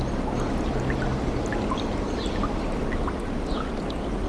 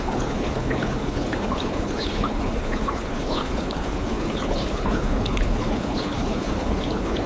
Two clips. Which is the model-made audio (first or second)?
second